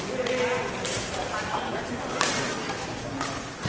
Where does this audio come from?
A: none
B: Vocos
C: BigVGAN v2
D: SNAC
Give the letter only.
A